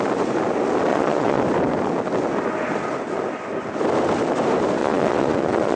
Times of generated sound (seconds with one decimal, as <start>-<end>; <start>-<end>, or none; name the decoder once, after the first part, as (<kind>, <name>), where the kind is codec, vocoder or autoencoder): 0.9-1.4 (vocoder, Vocos); 4.8-5.8